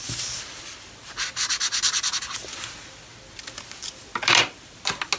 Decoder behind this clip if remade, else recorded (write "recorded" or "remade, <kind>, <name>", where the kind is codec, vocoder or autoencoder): recorded